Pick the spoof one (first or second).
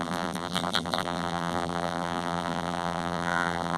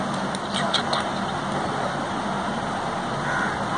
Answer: first